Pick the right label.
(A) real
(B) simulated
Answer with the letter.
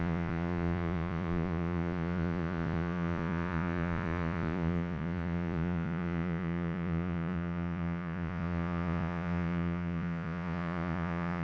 B